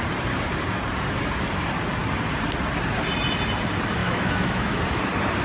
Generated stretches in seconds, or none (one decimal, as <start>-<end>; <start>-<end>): 4.0-4.8